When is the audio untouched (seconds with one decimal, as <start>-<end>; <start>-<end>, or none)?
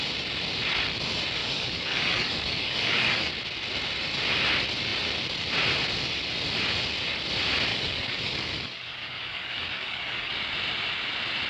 0.0-1.4; 3.3-7.7; 10.3-11.5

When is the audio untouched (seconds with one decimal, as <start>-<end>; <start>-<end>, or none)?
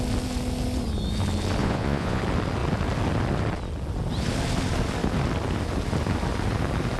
0.0-1.6; 2.2-7.0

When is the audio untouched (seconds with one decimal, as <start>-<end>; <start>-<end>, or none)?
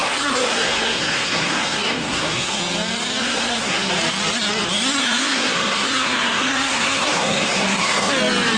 2.6-3.2; 3.9-5.0; 8.1-8.6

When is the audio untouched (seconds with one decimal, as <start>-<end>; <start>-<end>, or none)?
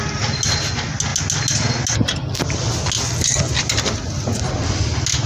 0.0-5.3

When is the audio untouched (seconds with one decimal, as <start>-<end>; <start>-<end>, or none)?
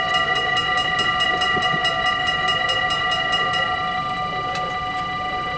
0.0-5.6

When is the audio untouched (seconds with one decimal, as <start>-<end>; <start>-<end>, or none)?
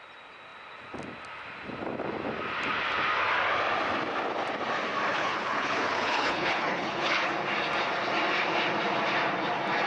0.0-5.1; 7.3-9.9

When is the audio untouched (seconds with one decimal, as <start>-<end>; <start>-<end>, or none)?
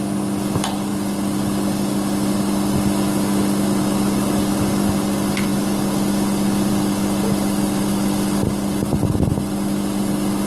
0.0-10.5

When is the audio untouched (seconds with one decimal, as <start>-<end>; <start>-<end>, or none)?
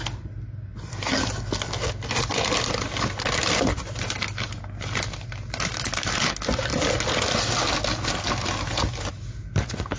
0.0-10.0